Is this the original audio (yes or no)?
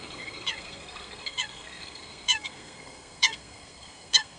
no